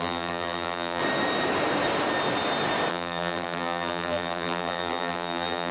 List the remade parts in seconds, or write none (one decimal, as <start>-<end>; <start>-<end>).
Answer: 0.0-1.0; 2.9-5.7